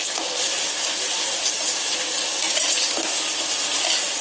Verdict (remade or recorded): recorded